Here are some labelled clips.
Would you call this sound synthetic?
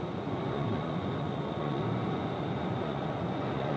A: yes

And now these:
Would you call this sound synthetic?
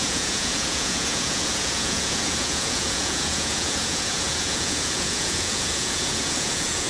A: yes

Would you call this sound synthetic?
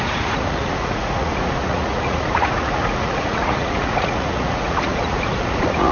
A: yes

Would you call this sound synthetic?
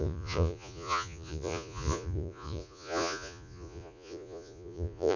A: yes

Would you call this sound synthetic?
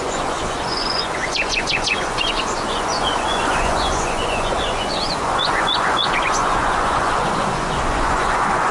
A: yes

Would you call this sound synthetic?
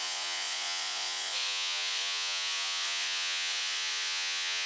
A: yes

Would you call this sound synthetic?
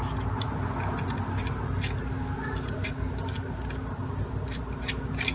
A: no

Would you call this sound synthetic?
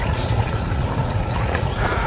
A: yes